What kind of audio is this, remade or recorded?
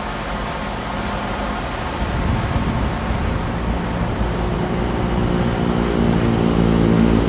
recorded